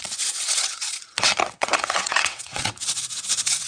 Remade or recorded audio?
remade